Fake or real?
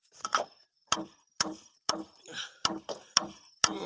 fake